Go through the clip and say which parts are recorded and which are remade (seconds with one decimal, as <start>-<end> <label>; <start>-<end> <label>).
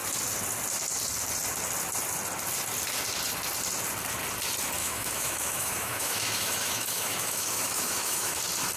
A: 0.0-4.8 recorded; 4.8-8.4 remade; 8.4-8.8 recorded